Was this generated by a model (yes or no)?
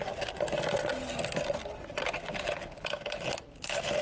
no